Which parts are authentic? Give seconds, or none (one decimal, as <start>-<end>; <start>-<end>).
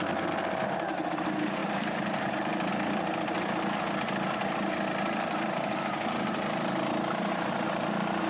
0.0-1.6; 2.7-8.3